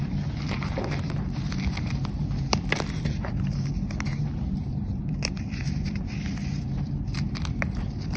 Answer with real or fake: fake